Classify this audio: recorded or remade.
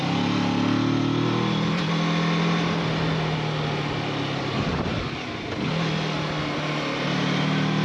recorded